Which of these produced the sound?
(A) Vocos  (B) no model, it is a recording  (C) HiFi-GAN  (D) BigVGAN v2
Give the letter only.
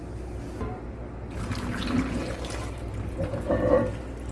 B